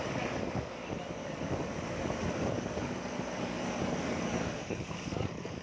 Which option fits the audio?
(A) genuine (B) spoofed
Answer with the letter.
B